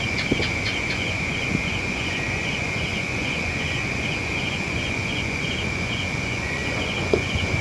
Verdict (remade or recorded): remade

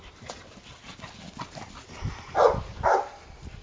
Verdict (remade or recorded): recorded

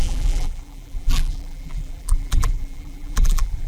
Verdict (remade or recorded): remade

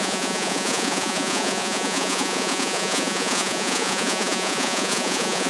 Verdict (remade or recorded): remade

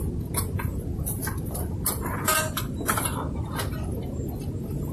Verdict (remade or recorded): recorded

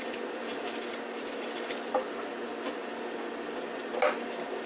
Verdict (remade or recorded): recorded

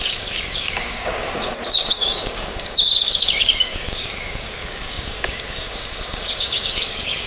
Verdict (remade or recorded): remade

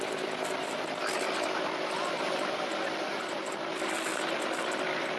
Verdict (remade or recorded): recorded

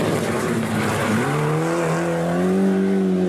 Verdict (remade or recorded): recorded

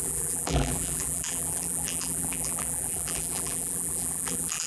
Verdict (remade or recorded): remade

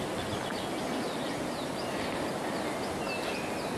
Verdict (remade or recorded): recorded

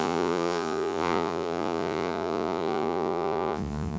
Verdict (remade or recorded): remade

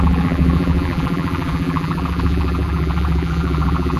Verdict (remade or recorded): remade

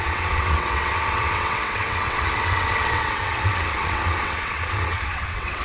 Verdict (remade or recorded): remade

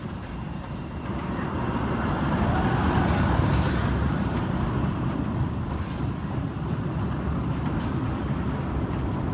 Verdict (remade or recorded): recorded